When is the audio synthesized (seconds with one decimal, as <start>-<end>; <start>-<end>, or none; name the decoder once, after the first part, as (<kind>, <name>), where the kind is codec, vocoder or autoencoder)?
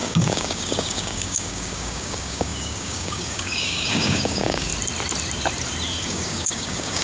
0.0-4.7 (codec, DAC); 6.0-7.0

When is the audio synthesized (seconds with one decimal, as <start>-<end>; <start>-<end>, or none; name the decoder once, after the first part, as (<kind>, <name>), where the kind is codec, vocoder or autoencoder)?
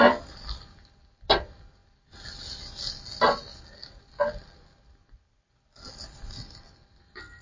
none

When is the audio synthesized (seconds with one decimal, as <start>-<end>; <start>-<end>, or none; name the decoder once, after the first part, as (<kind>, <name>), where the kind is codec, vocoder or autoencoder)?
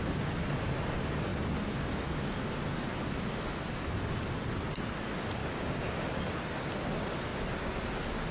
5.4-6.0 (codec, DAC)